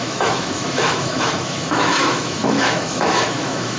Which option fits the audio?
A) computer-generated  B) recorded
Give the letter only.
A